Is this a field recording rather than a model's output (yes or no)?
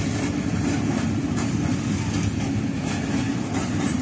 yes